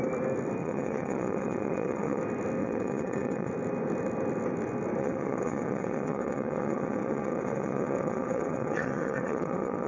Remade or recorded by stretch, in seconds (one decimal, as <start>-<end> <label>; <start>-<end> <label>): 0.0-0.6 recorded; 0.6-2.2 remade; 2.2-2.6 recorded; 2.6-3.5 remade; 3.5-5.0 recorded; 5.0-9.9 remade